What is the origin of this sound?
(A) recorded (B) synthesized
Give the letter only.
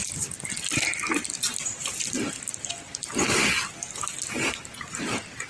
A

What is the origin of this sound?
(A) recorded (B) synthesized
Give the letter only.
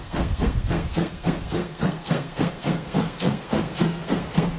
B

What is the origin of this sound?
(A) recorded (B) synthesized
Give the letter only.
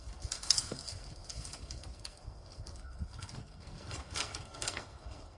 B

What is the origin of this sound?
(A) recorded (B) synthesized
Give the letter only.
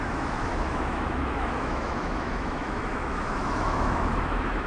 B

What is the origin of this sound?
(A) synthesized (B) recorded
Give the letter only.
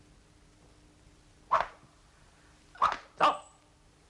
B